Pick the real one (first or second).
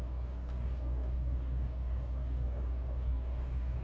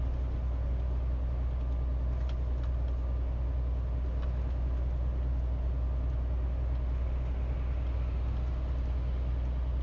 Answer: second